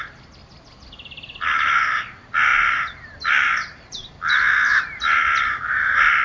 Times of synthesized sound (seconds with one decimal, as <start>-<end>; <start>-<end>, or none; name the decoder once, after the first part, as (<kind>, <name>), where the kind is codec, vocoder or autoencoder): 0.0-0.4 (vocoder, BigVGAN v2); 1.8-6.2